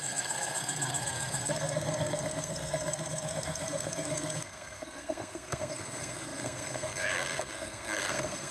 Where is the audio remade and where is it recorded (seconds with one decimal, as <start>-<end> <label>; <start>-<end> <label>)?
0.0-8.5 remade